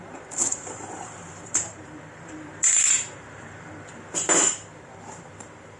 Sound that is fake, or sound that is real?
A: fake